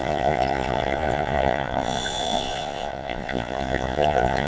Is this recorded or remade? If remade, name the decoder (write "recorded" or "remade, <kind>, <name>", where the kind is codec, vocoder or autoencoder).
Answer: remade, vocoder, Vocos